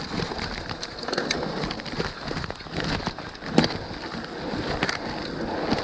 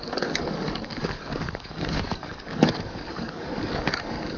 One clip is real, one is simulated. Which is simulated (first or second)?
second